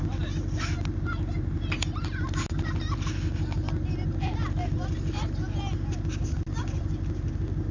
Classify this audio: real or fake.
real